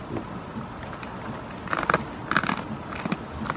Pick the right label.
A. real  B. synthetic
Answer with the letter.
A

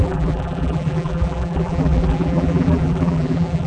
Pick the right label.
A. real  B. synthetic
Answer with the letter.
B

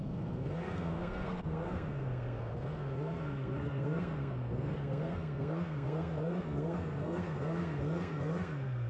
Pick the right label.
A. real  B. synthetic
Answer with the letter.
B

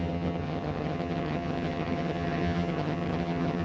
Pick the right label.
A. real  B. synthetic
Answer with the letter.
B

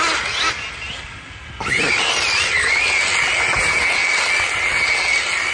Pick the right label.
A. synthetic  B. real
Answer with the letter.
B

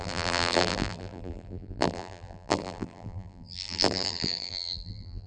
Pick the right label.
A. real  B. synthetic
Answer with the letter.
B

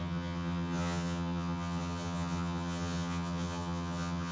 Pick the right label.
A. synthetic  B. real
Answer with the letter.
A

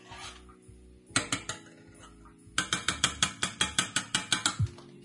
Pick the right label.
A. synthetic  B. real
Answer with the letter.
B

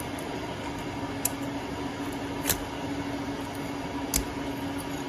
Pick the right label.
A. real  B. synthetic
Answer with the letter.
A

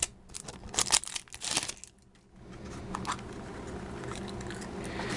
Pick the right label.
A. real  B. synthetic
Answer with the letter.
A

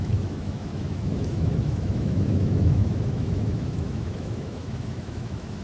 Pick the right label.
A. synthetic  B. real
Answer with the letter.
A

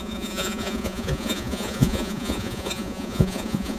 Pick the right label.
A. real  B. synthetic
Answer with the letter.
B